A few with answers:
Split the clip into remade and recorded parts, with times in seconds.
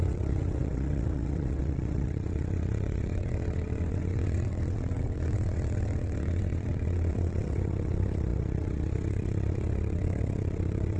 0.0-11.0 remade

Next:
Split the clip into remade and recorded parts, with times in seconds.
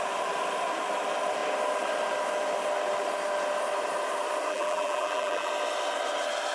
0.0-4.5 recorded; 4.5-5.5 remade; 5.5-6.5 recorded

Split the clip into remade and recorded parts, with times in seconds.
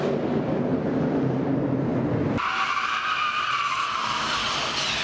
0.0-0.7 recorded; 0.7-1.5 remade; 1.5-5.0 recorded